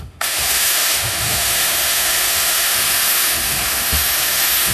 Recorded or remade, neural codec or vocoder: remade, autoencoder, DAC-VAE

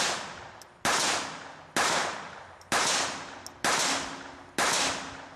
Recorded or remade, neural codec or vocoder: recorded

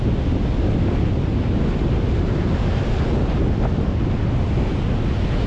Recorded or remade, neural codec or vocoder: recorded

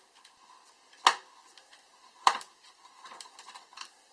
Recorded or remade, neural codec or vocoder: recorded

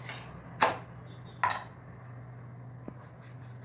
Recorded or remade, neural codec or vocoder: recorded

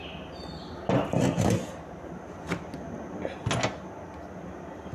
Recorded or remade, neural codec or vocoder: recorded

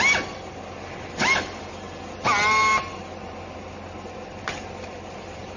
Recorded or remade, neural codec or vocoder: recorded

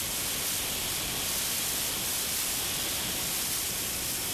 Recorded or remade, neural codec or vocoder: recorded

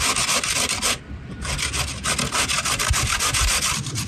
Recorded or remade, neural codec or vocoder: recorded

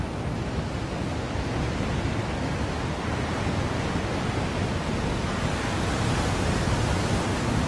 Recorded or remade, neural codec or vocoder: recorded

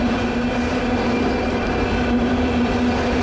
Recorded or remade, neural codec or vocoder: recorded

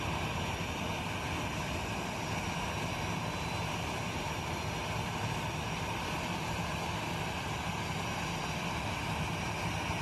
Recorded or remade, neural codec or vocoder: recorded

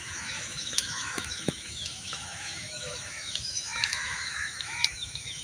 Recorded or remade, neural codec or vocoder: remade, autoencoder, DAC-VAE